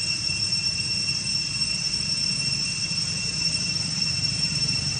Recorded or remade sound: remade